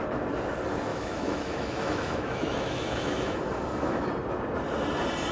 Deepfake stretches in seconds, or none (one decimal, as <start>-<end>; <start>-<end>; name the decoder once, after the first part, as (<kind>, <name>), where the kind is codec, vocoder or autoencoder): 0.9-4.1 (autoencoder, DAC-VAE)

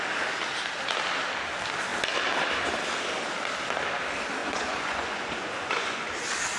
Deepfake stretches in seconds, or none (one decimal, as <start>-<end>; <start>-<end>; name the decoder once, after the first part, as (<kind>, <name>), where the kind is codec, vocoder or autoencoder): 4.4-6.1 (vocoder, Vocos)

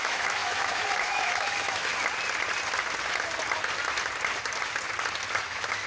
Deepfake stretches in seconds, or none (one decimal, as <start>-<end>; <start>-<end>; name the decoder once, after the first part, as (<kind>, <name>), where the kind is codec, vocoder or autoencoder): 0.0-1.9 (autoencoder, DAC-VAE); 5.4-5.9

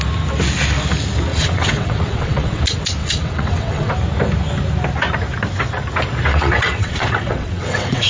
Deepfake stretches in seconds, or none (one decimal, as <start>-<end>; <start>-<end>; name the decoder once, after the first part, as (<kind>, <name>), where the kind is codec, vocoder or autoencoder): 1.3-2.6 (vocoder, WaveNeXt); 3.0-3.9; 6.3-8.1

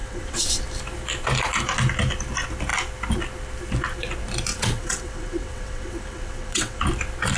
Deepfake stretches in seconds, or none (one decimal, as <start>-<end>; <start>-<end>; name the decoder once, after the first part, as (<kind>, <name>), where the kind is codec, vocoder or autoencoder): 0.0-0.6 (vocoder, WaveNeXt); 4.5-6.8

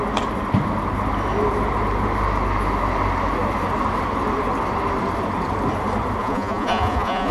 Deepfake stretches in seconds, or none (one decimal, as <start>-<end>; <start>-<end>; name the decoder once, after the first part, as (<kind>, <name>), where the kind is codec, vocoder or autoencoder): 6.2-7.3 (vocoder, Vocos)

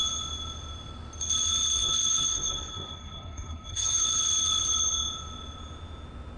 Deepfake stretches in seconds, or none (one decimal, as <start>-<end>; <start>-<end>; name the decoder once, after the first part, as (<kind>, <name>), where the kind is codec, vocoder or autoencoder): 1.7-4.0 (codec, SNAC)

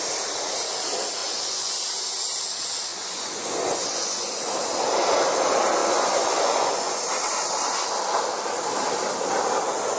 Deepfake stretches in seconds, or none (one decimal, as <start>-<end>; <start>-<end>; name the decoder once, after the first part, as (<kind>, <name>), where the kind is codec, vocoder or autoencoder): 1.2-1.8 (vocoder, Vocos); 2.9-4.3; 5.8-7.0